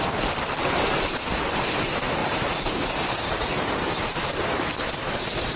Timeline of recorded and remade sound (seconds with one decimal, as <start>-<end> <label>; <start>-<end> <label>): 0.0-2.2 recorded; 2.2-4.6 remade; 4.6-5.6 recorded